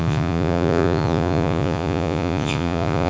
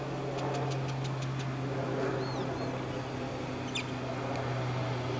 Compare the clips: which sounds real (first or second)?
second